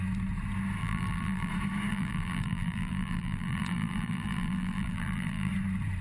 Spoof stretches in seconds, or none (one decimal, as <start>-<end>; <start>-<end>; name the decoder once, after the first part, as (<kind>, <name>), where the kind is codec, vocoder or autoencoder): 0.8-1.5 (vocoder, BigVGAN v2); 1.9-5.5